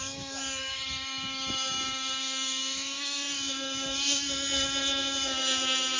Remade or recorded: remade